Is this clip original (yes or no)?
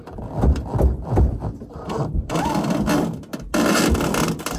yes